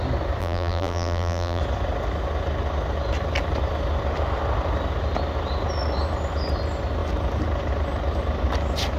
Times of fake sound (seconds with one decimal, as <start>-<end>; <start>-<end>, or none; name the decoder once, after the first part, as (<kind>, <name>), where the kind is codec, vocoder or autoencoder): 0.4-1.6 (vocoder, BigVGAN v2)